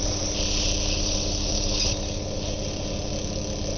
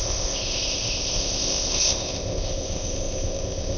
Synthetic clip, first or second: second